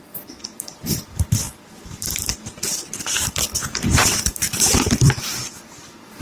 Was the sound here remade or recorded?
remade